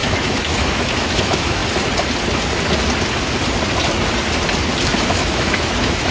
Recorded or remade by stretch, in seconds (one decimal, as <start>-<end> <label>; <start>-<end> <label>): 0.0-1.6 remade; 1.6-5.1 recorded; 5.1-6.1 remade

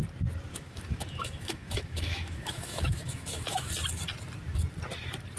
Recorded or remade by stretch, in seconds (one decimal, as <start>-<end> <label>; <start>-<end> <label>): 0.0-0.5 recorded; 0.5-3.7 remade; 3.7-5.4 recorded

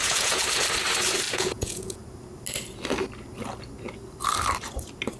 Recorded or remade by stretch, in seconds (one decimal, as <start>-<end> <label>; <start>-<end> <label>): 0.0-0.4 remade; 0.4-1.3 recorded; 1.3-2.0 remade; 2.0-5.2 recorded

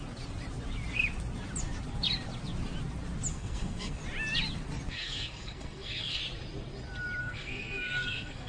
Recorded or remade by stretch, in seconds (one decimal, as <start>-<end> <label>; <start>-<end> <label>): 0.0-3.3 recorded; 3.3-4.0 remade; 4.0-4.9 recorded; 4.9-6.2 remade; 6.2-7.2 recorded; 7.2-8.5 remade